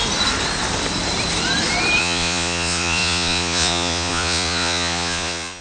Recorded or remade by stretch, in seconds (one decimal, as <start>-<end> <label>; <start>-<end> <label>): 0.0-2.0 recorded; 2.0-5.6 remade